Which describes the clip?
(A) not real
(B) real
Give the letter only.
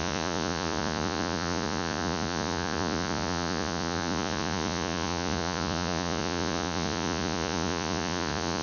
A